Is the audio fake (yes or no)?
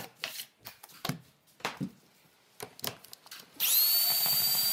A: no